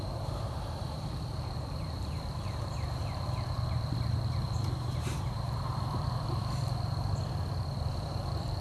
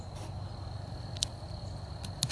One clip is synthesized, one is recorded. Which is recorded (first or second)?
second